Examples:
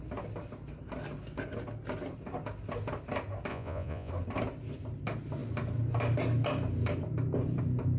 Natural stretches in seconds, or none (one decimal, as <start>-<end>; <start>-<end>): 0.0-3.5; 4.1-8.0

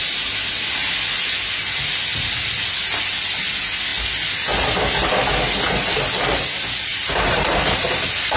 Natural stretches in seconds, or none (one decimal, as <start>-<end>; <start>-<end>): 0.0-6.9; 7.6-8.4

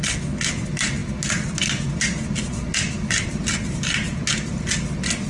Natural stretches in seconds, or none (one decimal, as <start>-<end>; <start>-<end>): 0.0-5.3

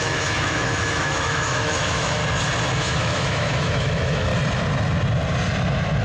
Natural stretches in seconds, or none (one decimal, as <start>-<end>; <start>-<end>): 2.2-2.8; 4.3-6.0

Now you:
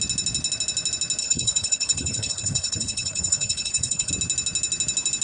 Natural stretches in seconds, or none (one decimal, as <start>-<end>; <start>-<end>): 0.0-1.2; 4.1-5.2

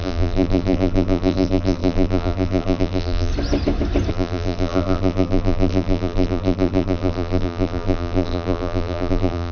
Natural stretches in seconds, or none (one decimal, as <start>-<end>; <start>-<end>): 3.3-4.1

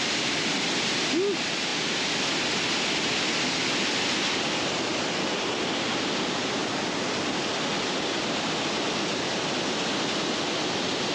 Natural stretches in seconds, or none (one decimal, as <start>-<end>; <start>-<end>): 0.0-11.1